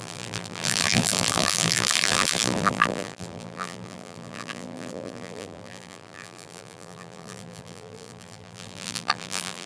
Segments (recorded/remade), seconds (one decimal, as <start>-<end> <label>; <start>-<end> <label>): 0.0-9.7 remade